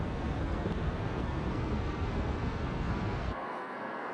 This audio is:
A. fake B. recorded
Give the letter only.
A